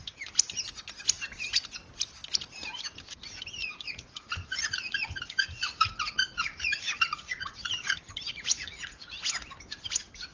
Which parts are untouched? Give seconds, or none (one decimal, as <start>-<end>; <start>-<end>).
0.0-3.6; 7.9-8.3; 9.2-10.3